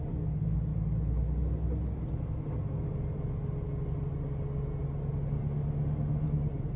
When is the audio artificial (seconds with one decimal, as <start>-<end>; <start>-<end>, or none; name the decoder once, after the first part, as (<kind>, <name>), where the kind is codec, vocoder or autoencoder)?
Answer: none